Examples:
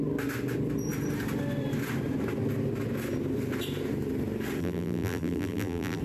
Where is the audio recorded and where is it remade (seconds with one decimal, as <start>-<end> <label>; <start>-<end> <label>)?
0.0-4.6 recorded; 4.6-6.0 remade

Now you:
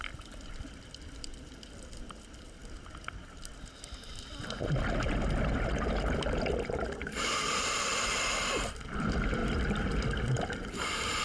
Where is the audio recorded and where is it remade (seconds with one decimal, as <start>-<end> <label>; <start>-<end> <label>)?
0.0-2.6 remade; 2.6-7.5 recorded; 7.5-9.4 remade; 9.4-10.4 recorded; 10.4-11.2 remade

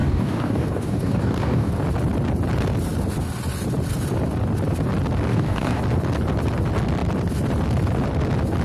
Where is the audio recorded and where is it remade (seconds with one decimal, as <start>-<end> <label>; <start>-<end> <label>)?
0.0-1.7 remade; 1.7-5.3 recorded; 5.3-5.8 remade; 5.8-8.6 recorded